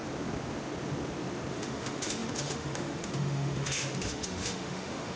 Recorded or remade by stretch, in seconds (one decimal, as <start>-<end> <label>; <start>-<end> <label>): 0.0-1.5 recorded; 1.5-5.2 remade